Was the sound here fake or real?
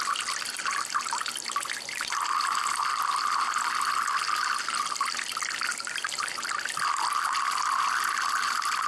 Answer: real